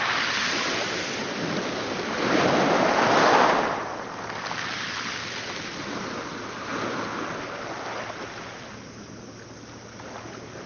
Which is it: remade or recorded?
recorded